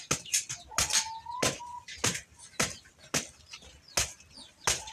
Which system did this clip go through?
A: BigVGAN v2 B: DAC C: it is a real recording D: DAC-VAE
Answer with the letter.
C